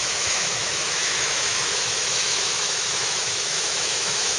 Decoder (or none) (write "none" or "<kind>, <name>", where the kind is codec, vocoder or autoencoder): autoencoder, DAC-VAE